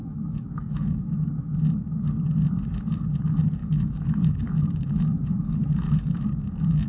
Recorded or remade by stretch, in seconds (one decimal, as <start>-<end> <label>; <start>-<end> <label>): 0.0-1.0 remade; 1.0-3.6 recorded; 3.6-6.1 remade; 6.1-6.9 recorded